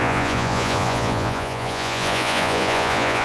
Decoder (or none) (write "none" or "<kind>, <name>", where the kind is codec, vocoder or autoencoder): vocoder, Vocos